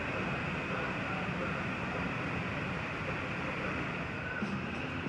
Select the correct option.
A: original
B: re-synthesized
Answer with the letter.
A